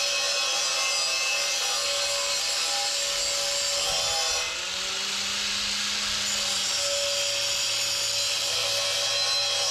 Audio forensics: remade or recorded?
recorded